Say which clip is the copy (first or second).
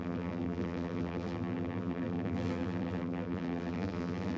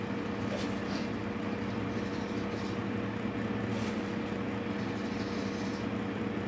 first